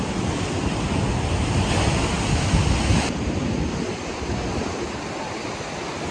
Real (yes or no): yes